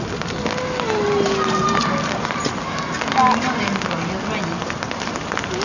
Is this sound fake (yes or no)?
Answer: no